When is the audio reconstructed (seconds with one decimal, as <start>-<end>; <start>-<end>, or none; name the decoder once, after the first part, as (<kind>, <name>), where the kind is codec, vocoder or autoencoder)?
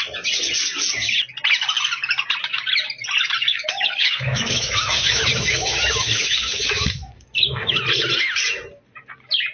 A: 3.5-7.8 (autoencoder, DAC-VAE)